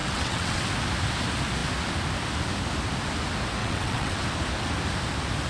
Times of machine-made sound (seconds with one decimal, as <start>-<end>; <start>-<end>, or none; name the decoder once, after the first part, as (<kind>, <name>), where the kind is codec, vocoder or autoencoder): 0.0-0.6 (vocoder, WaveNeXt); 3.6-4.2